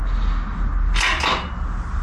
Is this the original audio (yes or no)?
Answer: yes